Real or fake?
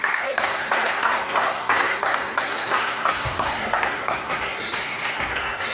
fake